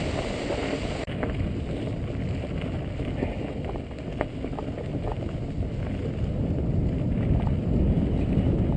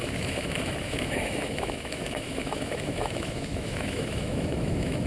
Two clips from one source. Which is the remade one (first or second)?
second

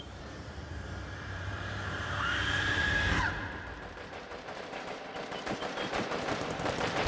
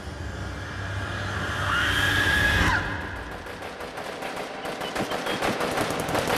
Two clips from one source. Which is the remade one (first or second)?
first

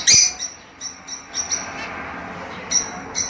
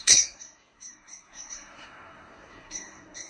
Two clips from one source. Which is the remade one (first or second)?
second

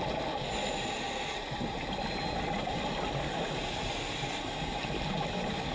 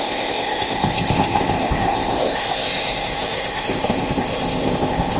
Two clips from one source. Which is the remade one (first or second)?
second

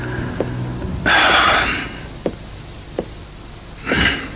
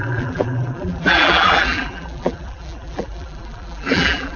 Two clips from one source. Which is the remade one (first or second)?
second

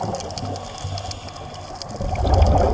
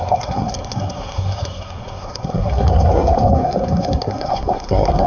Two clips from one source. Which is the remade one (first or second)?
second